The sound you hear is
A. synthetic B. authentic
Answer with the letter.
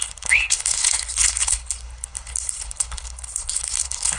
A